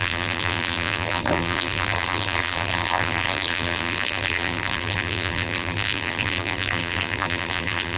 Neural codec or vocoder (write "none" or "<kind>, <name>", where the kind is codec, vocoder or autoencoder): vocoder, BigVGAN v2